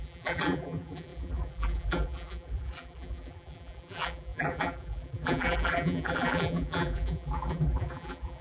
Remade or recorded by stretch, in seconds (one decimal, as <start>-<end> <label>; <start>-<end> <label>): 0.0-8.4 remade